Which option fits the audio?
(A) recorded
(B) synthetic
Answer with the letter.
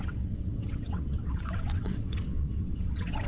B